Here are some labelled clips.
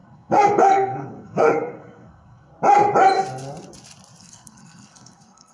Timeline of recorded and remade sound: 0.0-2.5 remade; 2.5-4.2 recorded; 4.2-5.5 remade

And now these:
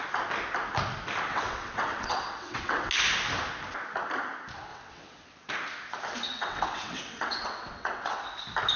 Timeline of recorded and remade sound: 0.0-1.3 recorded; 1.3-2.9 remade; 2.9-4.7 recorded; 4.7-5.5 remade; 5.5-6.3 recorded; 6.3-8.2 remade; 8.2-8.8 recorded

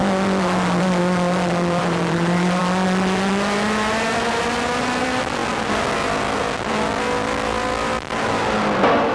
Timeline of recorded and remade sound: 0.0-1.8 recorded; 1.8-2.6 remade; 2.6-9.1 recorded

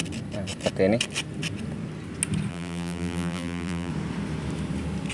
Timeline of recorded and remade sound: 0.0-2.5 recorded; 2.5-3.9 remade; 3.9-5.1 recorded

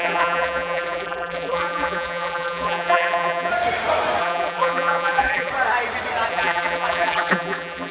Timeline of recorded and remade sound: 0.0-3.5 remade; 3.5-4.2 recorded; 4.2-5.5 remade; 5.5-6.3 recorded; 6.3-7.9 remade

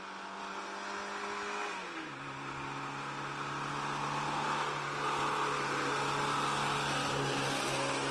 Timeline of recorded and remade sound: 0.0-8.1 recorded

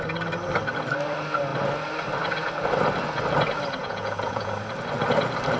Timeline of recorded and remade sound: 0.0-3.8 recorded; 3.8-4.5 remade; 4.5-5.6 recorded